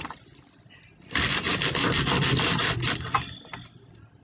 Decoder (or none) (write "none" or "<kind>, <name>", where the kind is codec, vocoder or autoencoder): vocoder, BigVGAN v2